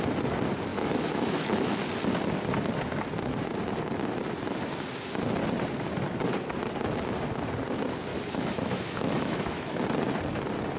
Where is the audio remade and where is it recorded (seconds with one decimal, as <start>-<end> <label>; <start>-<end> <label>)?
0.0-0.7 recorded; 0.7-1.8 remade; 1.8-8.1 recorded; 8.1-9.8 remade; 9.8-10.8 recorded